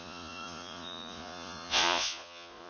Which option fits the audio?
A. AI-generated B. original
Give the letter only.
A